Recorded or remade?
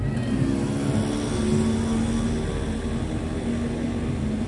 recorded